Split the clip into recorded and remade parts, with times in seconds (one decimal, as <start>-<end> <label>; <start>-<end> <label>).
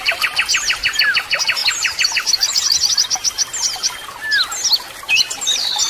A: 0.0-5.9 recorded